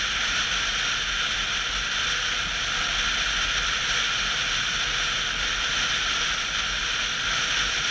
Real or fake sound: real